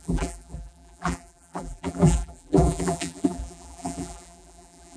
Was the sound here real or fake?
fake